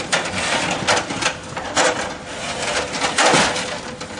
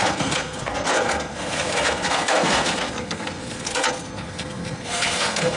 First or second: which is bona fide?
first